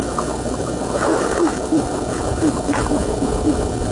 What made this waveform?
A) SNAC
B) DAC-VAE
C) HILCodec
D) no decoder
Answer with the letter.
B